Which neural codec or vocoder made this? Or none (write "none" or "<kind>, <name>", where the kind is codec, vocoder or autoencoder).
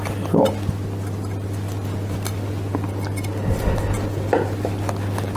none